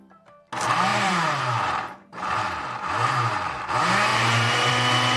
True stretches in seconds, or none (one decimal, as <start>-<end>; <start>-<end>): 0.0-0.9; 3.6-4.1; 4.7-5.2